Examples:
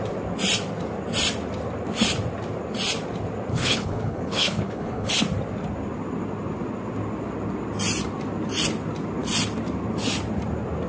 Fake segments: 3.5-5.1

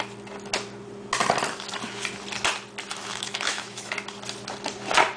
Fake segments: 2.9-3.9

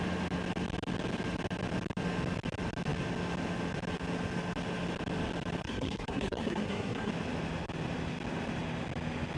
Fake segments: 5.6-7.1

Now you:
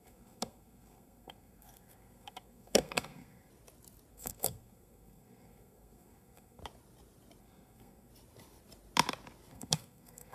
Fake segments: 0.0-3.5; 4.1-6.6; 7.4-8.1; 9.5-10.3

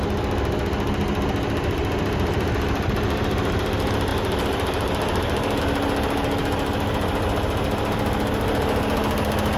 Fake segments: none

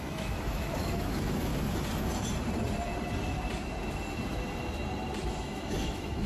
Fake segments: 0.0-1.5; 5.3-6.3